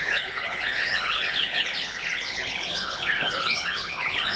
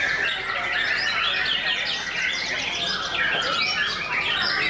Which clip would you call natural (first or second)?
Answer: second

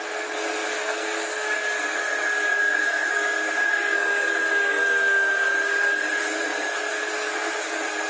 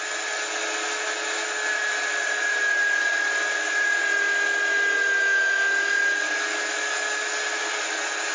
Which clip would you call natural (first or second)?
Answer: second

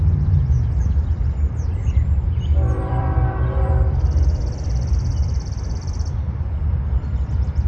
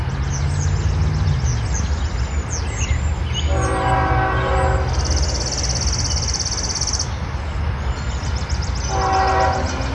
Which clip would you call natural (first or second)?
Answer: second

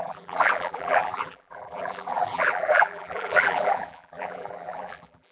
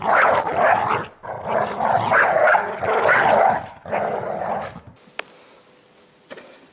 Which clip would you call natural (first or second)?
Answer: second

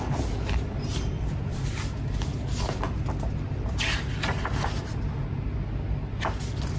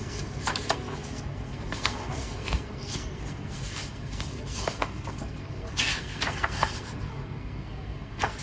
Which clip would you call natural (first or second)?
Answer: first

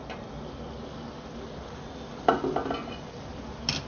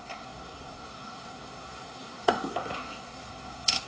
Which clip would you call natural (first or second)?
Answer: first